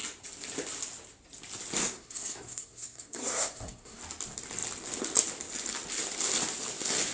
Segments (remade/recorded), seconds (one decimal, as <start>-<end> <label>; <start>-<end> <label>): 0.0-1.8 recorded; 1.8-4.0 remade; 4.0-7.1 recorded